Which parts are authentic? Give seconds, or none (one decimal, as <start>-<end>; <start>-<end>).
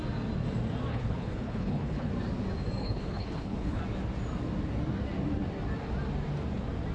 0.0-0.9; 2.1-2.8; 3.8-6.9